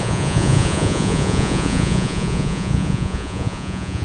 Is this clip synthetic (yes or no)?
yes